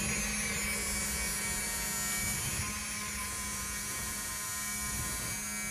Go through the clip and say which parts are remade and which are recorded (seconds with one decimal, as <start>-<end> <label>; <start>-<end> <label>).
0.0-3.2 recorded; 3.2-4.3 remade; 4.3-5.7 recorded